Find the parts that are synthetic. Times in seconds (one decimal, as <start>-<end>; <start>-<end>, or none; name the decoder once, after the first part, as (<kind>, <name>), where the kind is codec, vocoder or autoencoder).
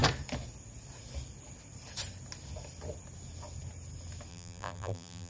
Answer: 4.3-5.3 (vocoder, BigVGAN v2)